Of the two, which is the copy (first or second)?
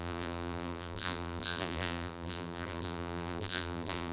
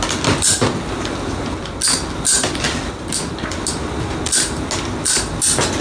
first